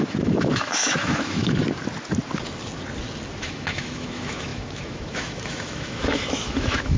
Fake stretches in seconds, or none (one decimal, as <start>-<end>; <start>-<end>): 0.0-1.6; 3.3-7.0